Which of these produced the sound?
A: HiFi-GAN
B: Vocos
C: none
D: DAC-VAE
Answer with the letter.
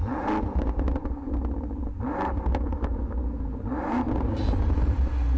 C